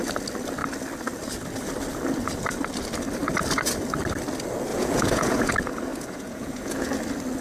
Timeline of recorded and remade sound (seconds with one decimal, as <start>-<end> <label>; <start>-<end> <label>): 0.0-4.7 recorded; 4.7-5.5 remade; 5.5-5.9 recorded; 5.9-6.9 remade; 6.9-7.4 recorded